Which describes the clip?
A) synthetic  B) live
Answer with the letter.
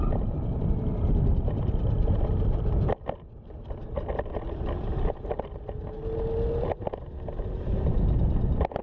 B